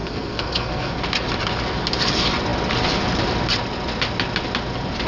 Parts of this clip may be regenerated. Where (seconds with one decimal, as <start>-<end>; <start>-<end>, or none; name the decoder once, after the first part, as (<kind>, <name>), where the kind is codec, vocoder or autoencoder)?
0.0-1.0 (codec, SNAC)